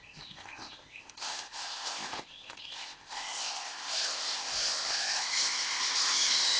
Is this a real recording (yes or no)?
no